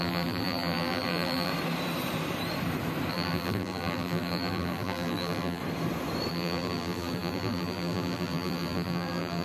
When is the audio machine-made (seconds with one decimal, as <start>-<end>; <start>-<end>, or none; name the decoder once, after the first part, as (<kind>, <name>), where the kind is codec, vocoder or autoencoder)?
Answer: 0.0-1.5 (vocoder, BigVGAN v2); 3.1-5.6; 6.3-9.4